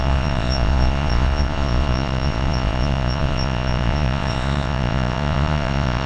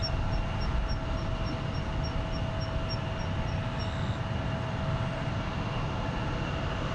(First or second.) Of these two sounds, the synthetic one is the first